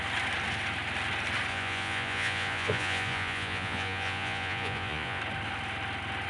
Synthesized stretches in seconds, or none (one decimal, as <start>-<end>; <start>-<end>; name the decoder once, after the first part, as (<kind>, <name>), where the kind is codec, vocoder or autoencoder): 1.5-5.2 (vocoder, Vocos)